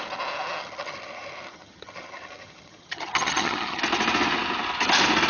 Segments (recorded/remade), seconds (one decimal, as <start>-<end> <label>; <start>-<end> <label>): 0.0-0.6 recorded; 0.6-3.8 remade; 3.8-5.3 recorded